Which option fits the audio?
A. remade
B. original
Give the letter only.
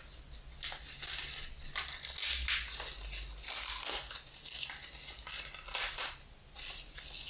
B